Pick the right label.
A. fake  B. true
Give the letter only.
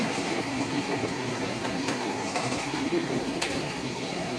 A